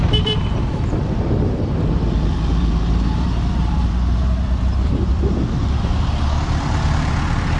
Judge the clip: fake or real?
fake